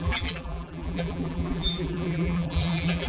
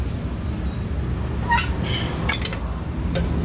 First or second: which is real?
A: second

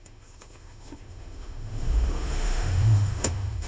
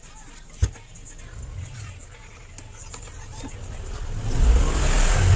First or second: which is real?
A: second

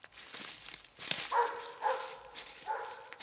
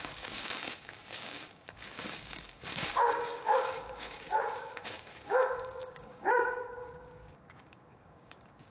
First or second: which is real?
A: first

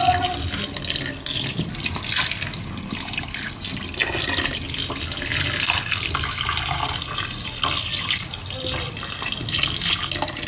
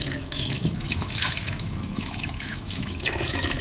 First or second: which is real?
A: first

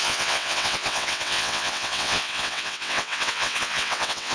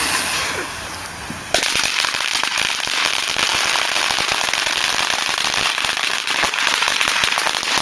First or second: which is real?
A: second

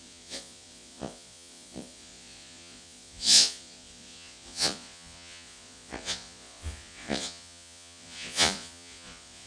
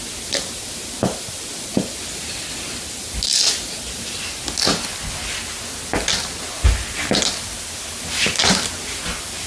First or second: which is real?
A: second